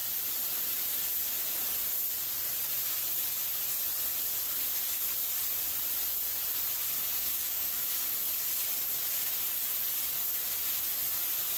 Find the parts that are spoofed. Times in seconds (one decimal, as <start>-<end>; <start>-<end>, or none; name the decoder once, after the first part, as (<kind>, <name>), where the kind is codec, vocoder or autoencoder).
7.2-7.9 (codec, DAC)